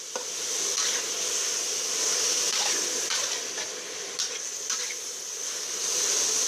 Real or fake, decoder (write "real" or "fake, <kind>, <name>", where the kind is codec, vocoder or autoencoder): real